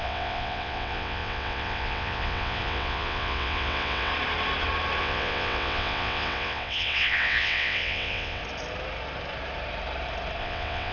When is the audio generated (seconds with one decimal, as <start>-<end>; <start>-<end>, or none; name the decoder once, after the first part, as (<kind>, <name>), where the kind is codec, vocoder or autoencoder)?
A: 0.0-4.1 (vocoder, WaveNeXt); 5.0-8.4; 10.4-10.9